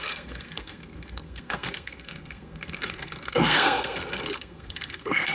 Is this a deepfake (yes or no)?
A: yes